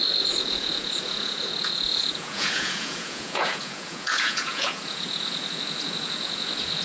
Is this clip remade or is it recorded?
remade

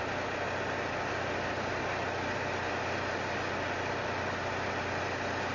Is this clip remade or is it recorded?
recorded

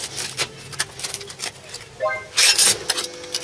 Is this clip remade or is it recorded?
recorded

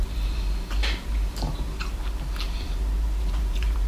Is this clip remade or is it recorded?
remade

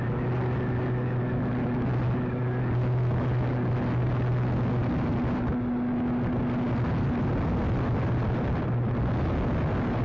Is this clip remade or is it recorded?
recorded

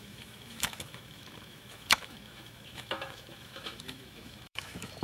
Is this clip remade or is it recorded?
remade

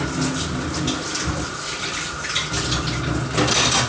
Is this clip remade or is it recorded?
recorded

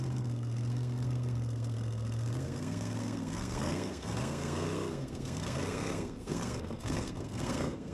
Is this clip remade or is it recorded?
remade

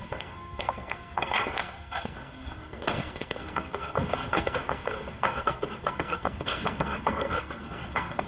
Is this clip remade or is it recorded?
remade